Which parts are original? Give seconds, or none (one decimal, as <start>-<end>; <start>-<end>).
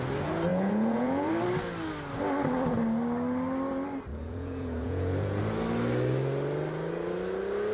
0.0-0.5; 1.3-4.1; 5.4-7.7